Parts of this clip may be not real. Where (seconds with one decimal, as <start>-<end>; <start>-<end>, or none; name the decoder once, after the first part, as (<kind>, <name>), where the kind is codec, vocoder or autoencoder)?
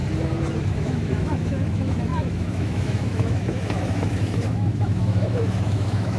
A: 0.6-6.2 (autoencoder, DAC-VAE)